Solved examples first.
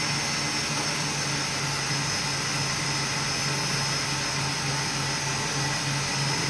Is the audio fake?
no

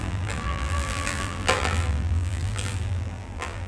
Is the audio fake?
yes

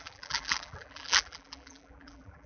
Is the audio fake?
yes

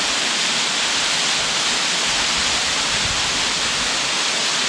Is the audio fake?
no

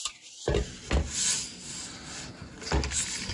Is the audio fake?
no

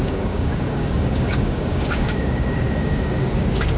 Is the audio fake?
yes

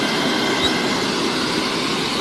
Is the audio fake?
no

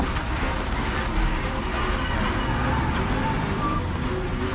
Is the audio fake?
no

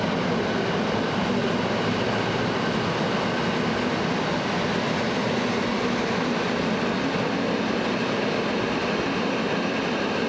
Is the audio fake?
no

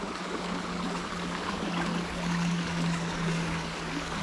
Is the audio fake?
yes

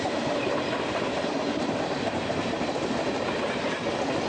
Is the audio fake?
yes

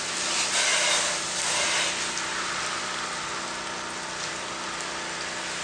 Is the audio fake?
no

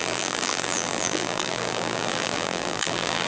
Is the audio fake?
yes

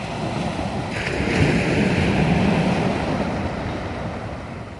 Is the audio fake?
no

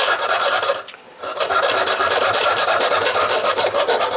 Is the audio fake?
no